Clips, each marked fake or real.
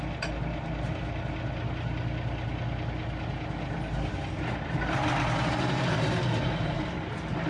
real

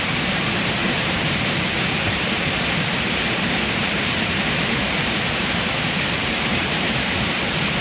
fake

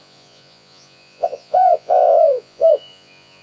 fake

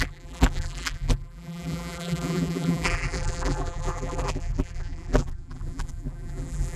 fake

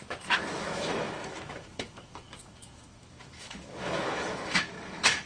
fake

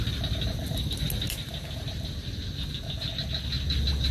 real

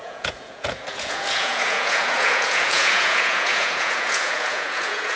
fake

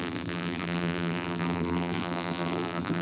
fake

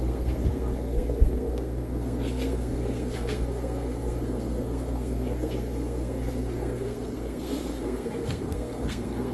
fake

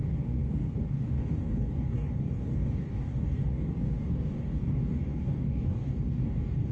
fake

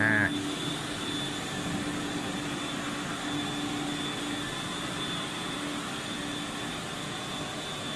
real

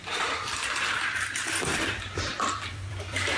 fake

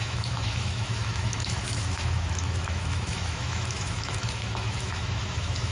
fake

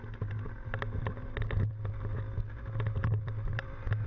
real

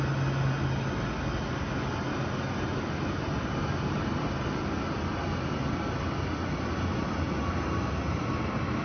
real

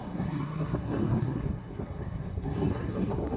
fake